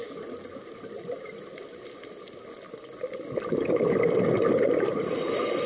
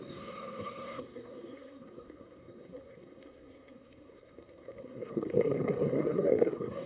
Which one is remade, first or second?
second